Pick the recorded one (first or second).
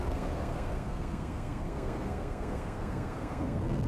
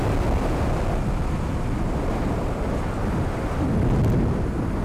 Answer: second